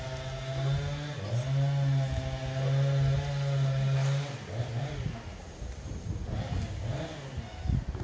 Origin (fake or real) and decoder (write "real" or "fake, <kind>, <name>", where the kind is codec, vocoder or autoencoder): real